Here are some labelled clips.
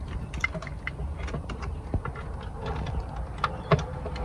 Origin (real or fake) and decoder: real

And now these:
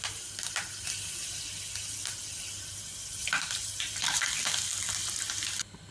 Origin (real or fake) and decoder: real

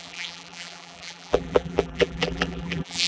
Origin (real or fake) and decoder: fake, vocoder, BigVGAN v2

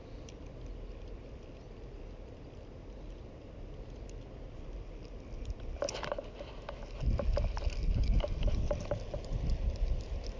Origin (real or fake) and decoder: real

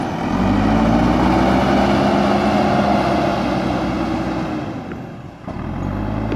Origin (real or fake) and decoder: real